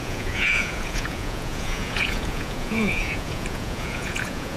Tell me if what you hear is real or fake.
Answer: fake